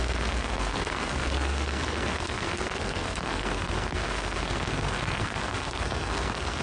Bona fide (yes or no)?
no